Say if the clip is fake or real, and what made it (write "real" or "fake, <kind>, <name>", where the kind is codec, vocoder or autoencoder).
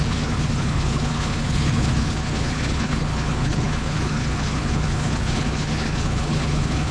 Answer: fake, codec, HILCodec